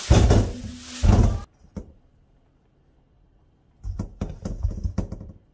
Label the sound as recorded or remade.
recorded